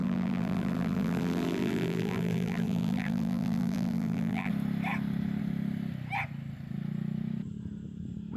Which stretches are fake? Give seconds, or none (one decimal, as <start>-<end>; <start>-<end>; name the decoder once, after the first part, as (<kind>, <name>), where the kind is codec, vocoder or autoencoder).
0.0-4.5 (vocoder, BigVGAN v2)